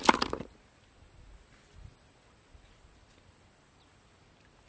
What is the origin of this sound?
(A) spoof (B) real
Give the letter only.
B